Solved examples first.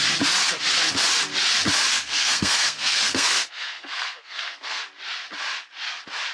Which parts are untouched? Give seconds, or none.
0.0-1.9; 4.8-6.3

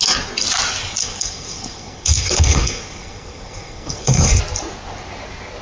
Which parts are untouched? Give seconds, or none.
0.0-1.0; 4.4-5.6

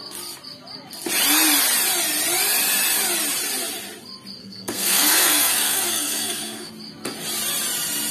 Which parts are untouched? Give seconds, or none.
0.0-4.4; 6.7-8.1

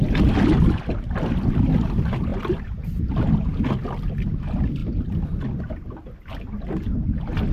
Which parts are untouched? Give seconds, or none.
0.0-7.5

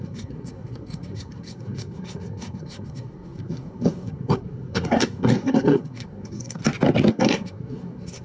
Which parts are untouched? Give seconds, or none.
6.6-7.1